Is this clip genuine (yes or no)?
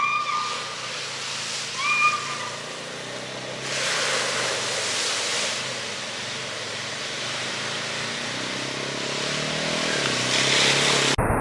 yes